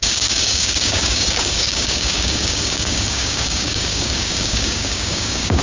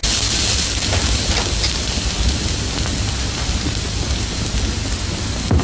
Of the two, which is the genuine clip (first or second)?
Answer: second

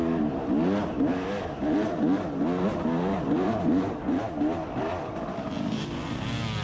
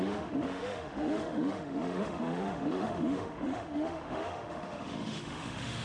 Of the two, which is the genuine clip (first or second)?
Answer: first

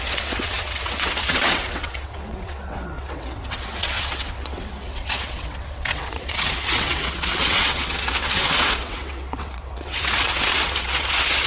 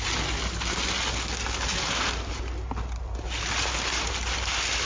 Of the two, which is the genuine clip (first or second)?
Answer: second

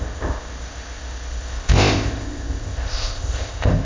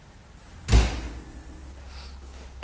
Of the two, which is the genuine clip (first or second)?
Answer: second